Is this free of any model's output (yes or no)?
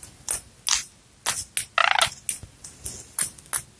yes